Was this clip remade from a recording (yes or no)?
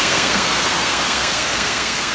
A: yes